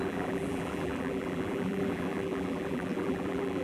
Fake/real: fake